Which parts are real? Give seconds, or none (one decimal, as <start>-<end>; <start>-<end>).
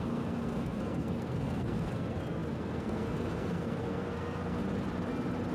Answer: 4.6-5.5